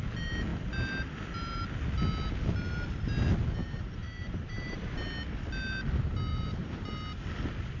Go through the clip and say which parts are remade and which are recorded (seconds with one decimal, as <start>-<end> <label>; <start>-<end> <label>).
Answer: 0.0-3.6 recorded; 3.6-4.8 remade; 4.8-6.3 recorded; 6.3-6.9 remade; 6.9-7.8 recorded